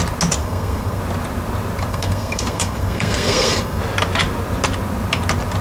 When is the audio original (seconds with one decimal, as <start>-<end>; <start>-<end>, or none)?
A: 0.0-0.4; 1.0-1.9; 3.8-5.6